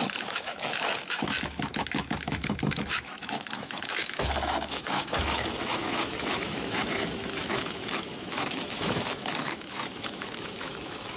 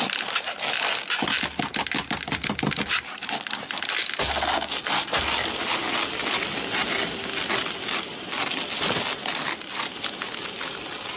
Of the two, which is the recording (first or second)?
second